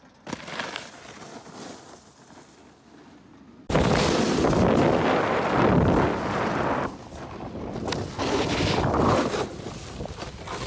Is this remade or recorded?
recorded